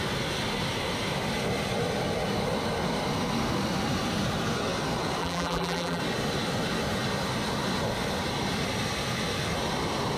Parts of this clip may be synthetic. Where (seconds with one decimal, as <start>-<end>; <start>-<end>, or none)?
5.2-6.0